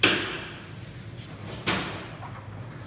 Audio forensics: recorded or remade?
recorded